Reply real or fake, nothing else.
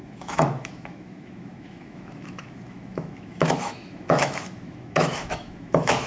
fake